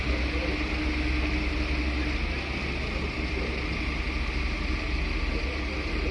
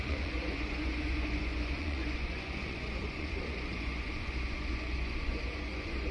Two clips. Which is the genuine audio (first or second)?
first